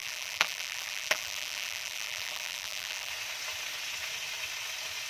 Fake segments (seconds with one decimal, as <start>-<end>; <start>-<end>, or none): 0.0-3.1